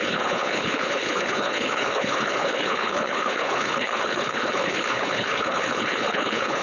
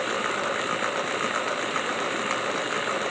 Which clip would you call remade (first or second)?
first